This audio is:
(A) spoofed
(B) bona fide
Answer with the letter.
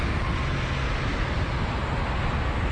B